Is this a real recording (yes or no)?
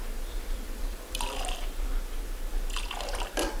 no